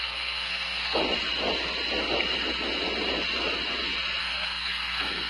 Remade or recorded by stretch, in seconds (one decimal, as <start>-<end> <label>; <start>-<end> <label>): 0.0-1.0 remade; 1.0-4.2 recorded; 4.2-5.3 remade

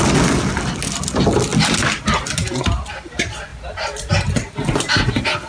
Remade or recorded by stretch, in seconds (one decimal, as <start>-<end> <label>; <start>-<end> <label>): 0.0-5.5 recorded

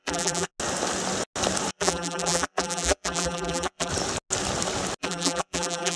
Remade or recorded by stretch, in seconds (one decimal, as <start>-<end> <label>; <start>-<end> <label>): 0.0-0.5 remade; 0.5-1.7 recorded; 1.7-3.9 remade; 3.9-5.0 recorded; 5.0-6.0 remade

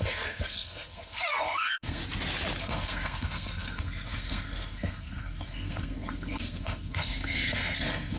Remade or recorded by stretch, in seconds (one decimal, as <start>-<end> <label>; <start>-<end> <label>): 0.0-2.0 remade; 2.0-2.6 recorded; 2.6-8.2 remade

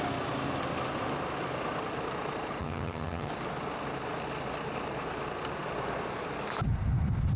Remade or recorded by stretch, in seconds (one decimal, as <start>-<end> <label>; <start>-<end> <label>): 0.0-2.6 recorded; 2.6-3.3 remade; 3.3-7.4 recorded

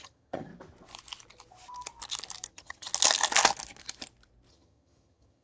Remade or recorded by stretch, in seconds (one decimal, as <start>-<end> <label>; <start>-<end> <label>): 0.0-0.5 remade; 0.5-2.5 recorded; 2.5-2.9 remade; 2.9-4.5 recorded; 4.5-5.4 remade